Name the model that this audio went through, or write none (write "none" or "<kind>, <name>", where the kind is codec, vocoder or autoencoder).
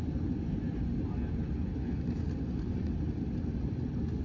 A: none